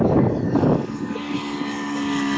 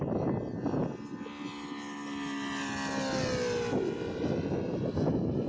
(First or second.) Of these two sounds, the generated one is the first